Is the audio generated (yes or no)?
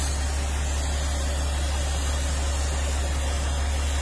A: no